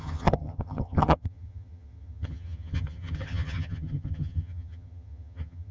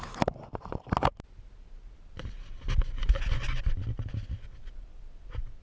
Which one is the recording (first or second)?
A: second